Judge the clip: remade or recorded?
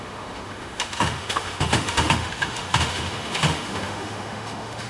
remade